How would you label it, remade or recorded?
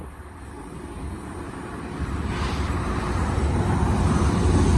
recorded